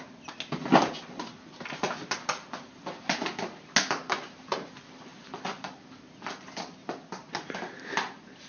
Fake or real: real